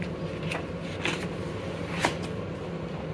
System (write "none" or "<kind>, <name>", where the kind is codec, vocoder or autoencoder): none